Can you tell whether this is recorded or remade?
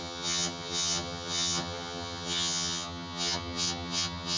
remade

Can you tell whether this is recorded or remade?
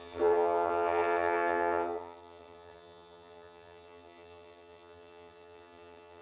remade